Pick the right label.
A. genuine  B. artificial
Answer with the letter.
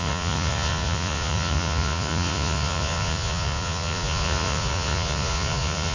B